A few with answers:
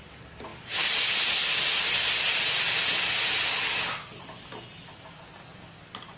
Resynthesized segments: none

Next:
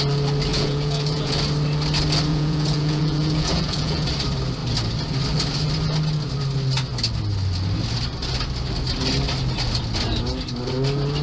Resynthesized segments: 0.5-1.4 (vocoder, Vocos); 2.3-4.1

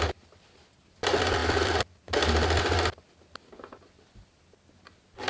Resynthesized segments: none

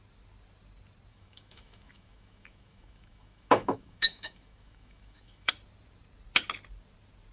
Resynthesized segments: 1.1-5.5 (autoencoder, DAC-VAE)

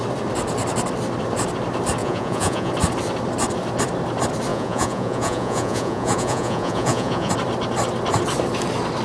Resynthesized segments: 2.0-2.7 (vocoder, Vocos); 4.5-7.3

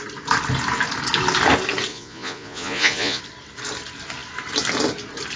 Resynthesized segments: 1.9-3.2 (vocoder, Vocos)